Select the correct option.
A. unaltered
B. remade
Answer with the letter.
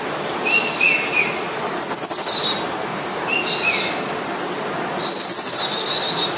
A